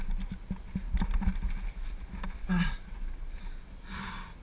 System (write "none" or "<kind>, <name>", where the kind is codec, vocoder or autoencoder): none